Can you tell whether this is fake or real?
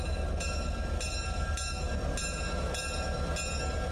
real